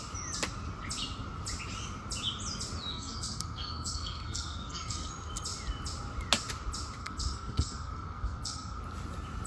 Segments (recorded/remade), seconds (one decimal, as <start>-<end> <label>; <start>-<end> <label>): 0.0-2.9 recorded; 2.9-5.1 remade; 5.1-7.0 recorded; 7.0-8.8 remade; 8.8-9.5 recorded